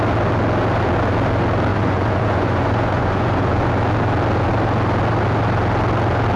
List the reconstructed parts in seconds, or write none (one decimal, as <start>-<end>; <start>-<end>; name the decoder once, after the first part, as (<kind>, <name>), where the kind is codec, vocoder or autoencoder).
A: 1.7-3.7 (vocoder, Vocos)